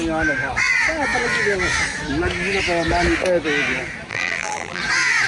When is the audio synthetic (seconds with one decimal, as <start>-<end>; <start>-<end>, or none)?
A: 4.1-4.8